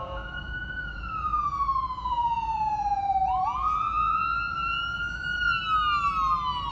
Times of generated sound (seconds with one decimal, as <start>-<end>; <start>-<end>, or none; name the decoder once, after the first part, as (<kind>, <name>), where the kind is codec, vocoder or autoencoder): 0.0-4.2 (vocoder, Vocos)